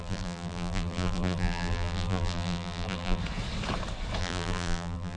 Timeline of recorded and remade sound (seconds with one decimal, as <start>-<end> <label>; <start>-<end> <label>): 0.0-3.2 remade; 3.2-4.2 recorded; 4.2-5.2 remade